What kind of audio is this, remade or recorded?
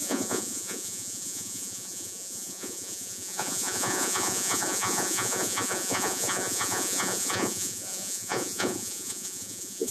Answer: remade